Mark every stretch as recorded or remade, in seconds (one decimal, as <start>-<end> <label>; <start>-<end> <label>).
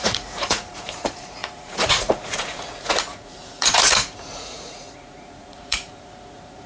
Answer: 0.0-6.7 remade